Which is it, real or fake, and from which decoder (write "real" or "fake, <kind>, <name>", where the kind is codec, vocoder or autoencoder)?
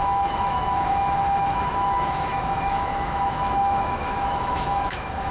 fake, autoencoder, DAC-VAE